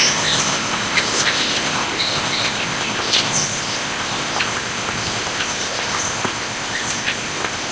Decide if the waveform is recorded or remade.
remade